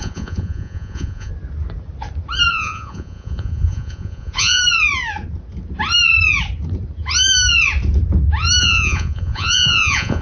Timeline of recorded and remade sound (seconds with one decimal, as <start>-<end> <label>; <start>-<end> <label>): 0.0-1.3 remade; 1.3-2.5 recorded; 2.5-4.6 remade; 4.6-8.6 recorded; 8.6-10.2 remade